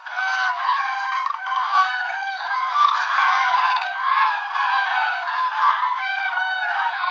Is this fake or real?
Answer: fake